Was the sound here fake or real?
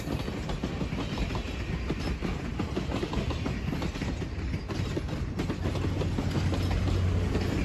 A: real